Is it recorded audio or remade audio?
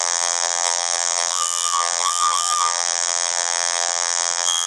remade